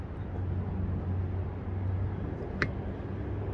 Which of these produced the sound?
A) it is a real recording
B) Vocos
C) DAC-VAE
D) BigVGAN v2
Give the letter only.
A